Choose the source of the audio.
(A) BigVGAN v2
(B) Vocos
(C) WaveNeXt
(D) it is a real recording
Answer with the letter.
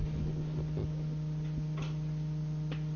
D